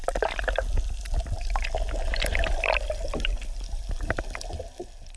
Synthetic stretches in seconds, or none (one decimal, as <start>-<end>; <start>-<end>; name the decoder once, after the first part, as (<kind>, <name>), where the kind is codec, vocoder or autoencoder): 2.3-3.3 (vocoder, BigVGAN v2)

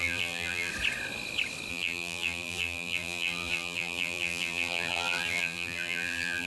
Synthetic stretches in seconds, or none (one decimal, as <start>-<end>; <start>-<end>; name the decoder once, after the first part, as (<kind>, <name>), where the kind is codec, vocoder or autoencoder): 0.0-0.7 (vocoder, BigVGAN v2); 1.7-6.5

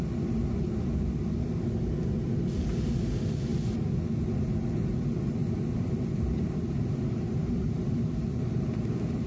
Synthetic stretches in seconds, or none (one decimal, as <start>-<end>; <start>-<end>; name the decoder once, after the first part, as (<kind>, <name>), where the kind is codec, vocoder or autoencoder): 5.4-9.3 (vocoder, BigVGAN v2)

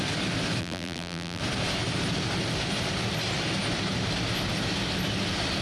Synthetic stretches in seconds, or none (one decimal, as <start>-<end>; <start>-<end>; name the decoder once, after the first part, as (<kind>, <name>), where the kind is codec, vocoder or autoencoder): 0.6-1.4 (vocoder, BigVGAN v2)

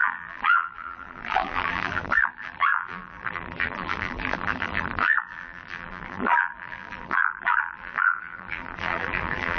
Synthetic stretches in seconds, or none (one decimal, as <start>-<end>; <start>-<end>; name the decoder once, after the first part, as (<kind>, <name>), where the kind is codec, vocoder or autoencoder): 0.0-9.6 (vocoder, BigVGAN v2)

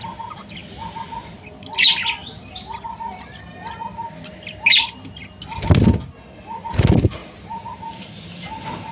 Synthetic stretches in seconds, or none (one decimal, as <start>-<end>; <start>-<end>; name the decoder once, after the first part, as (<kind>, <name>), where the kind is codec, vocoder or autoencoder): 0.6-1.3 (vocoder, BigVGAN v2); 2.2-3.0; 7.2-8.1

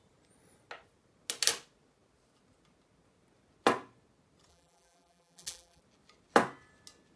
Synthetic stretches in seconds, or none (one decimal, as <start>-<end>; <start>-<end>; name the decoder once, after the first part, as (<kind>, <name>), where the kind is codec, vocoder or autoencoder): 4.5-5.8 (vocoder, BigVGAN v2)

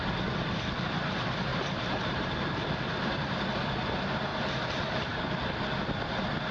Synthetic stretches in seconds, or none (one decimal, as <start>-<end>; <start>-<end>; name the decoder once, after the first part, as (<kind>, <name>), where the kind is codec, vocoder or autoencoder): 1.5-3.4 (vocoder, BigVGAN v2); 4.3-5.2